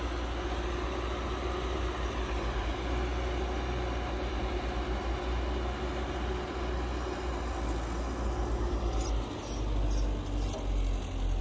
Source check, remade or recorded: recorded